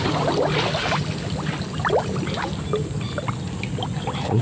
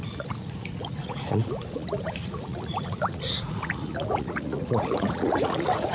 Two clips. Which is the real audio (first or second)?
first